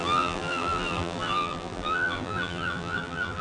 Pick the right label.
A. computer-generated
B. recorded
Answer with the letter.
A